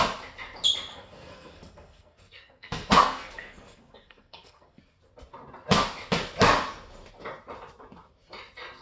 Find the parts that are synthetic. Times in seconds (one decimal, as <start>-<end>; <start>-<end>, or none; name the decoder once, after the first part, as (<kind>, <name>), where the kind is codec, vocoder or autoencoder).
0.9-4.8 (codec, SNAC)